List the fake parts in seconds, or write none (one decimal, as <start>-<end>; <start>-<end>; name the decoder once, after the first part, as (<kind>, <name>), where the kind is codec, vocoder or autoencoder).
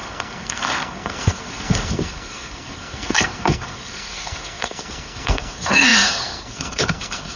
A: 0.0-7.4 (codec, SNAC)